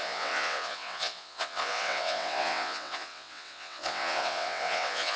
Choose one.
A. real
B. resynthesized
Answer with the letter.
B